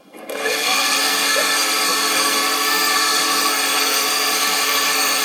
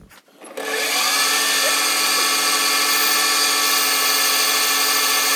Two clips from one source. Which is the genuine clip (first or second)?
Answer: second